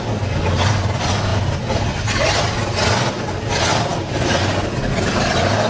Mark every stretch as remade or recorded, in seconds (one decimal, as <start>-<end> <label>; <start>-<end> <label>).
0.0-5.7 recorded

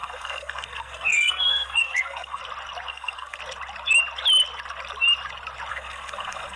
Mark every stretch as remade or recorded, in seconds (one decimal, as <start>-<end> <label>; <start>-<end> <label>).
0.0-2.4 remade; 2.4-2.9 recorded; 2.9-3.4 remade; 3.4-5.7 recorded; 5.7-6.6 remade

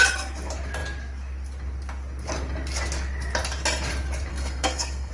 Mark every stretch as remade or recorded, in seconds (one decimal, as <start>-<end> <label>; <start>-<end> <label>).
0.0-4.3 recorded; 4.3-5.1 remade

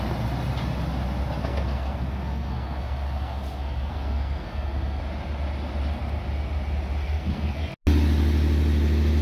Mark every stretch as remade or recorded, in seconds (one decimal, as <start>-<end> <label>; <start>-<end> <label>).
0.0-1.4 recorded; 1.4-5.0 remade; 5.0-7.0 recorded; 7.0-7.6 remade; 7.6-9.2 recorded

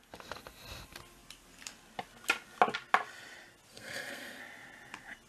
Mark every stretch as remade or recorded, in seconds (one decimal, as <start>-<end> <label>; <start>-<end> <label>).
0.0-3.7 recorded; 3.7-4.4 remade; 4.4-5.3 recorded